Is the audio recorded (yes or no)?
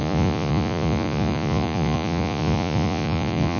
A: no